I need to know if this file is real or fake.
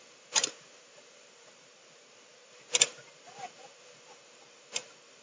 fake